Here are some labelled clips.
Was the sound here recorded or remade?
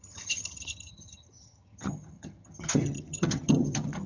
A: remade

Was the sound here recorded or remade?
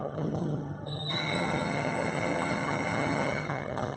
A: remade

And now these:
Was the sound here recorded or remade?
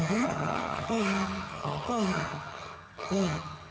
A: remade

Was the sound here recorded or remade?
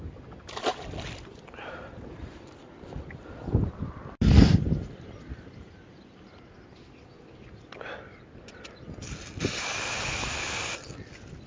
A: recorded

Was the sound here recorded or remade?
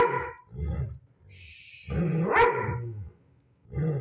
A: recorded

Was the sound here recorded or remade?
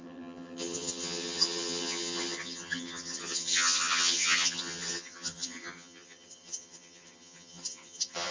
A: remade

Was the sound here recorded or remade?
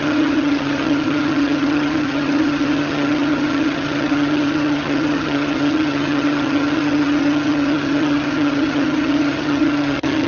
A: remade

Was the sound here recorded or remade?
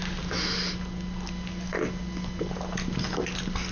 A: recorded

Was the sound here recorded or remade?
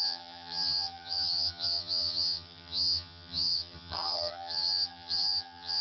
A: remade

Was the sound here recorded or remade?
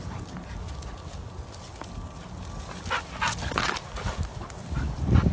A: recorded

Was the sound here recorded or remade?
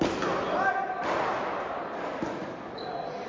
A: recorded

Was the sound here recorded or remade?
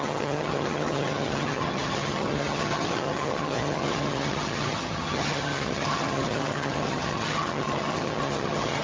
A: remade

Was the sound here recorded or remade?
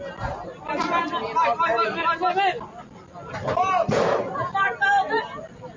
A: recorded